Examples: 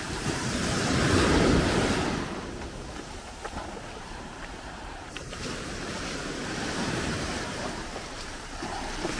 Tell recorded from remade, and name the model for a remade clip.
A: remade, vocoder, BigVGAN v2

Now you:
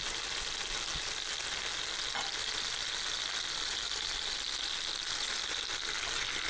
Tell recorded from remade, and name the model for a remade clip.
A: recorded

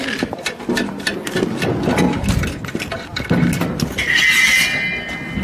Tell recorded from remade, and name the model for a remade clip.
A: recorded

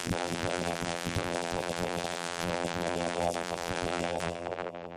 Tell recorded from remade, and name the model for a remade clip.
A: remade, vocoder, BigVGAN v2